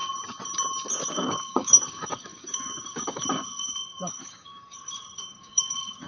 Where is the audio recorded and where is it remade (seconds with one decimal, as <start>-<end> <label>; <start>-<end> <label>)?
0.0-0.9 recorded; 0.9-6.1 remade